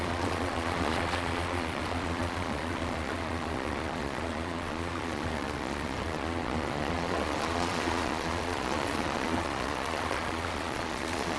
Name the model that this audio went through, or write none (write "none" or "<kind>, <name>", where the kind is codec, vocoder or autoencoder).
vocoder, Vocos